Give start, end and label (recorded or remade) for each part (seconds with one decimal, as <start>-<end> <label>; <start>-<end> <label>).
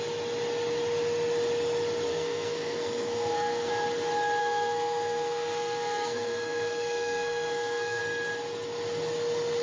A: 0.0-2.1 recorded; 2.1-3.7 remade; 3.7-4.4 recorded; 4.4-8.0 remade; 8.0-9.6 recorded